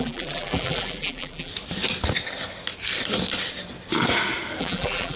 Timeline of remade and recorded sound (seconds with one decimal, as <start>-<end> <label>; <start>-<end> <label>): 0.0-1.5 remade; 1.5-4.6 recorded; 4.6-5.2 remade